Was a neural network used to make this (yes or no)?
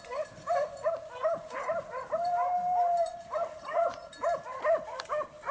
yes